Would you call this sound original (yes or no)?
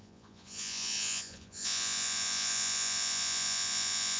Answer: no